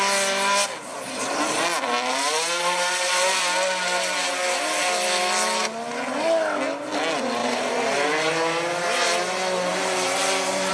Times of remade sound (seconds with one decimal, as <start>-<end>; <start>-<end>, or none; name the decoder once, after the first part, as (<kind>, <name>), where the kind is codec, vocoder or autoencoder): 2.1-3.3 (vocoder, BigVGAN v2); 7.4-8.3; 9.7-10.7